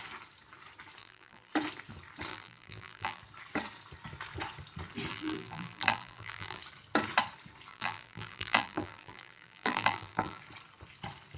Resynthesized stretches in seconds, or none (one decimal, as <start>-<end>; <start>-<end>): 1.0-1.5; 2.3-3.2; 5.1-6.6; 7.7-10.4